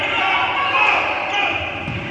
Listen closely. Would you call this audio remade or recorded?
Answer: recorded